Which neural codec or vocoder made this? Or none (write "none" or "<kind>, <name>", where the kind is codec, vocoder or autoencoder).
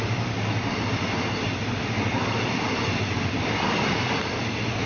none